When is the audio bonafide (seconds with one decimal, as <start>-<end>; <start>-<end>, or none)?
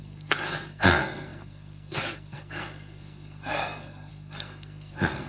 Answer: none